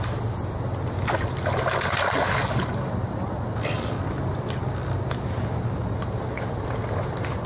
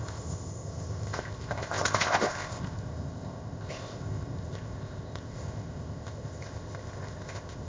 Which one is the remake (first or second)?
second